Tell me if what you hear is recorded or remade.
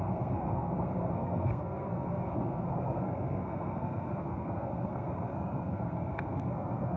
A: remade